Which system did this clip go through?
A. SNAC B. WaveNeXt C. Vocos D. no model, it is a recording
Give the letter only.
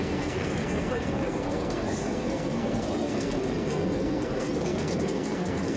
A